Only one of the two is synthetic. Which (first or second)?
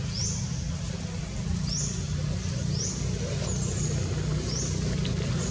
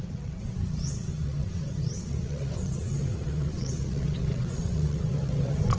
second